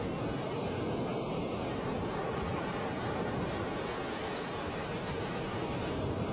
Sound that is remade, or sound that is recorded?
recorded